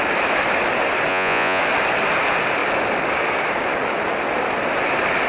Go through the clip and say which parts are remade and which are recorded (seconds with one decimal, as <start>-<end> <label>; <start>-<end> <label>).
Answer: 0.0-1.1 recorded; 1.1-1.6 remade; 1.6-5.3 recorded